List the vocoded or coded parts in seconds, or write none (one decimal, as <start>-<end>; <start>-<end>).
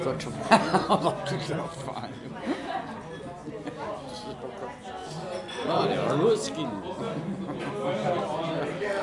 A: 0.7-1.6; 5.0-5.9